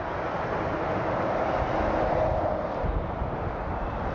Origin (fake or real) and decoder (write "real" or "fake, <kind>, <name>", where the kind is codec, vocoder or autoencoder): real